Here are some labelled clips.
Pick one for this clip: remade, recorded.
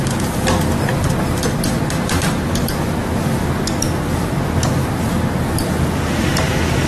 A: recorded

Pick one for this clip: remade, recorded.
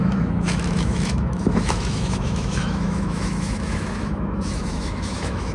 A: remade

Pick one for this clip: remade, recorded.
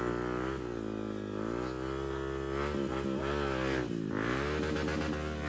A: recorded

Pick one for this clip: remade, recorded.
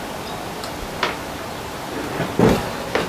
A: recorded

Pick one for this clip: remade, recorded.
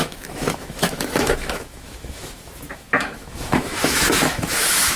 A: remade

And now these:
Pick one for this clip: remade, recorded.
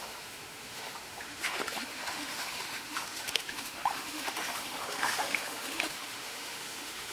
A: remade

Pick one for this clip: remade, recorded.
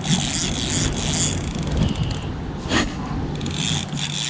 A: recorded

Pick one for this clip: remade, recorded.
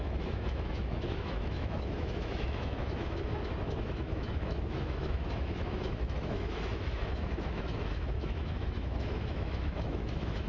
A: remade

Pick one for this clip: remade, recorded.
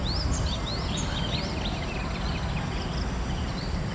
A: recorded